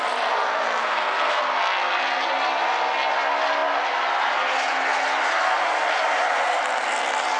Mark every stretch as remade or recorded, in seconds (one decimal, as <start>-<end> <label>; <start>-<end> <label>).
0.0-0.8 recorded; 0.8-1.4 remade; 1.4-7.4 recorded